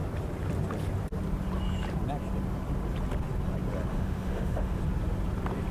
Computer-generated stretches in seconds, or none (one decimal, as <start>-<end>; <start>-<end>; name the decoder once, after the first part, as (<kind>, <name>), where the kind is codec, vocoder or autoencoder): 3.9-4.8 (autoencoder, DAC-VAE)